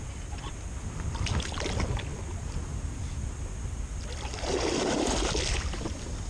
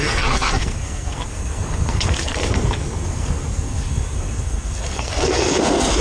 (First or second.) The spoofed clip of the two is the second